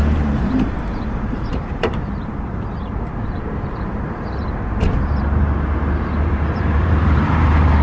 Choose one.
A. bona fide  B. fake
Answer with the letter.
B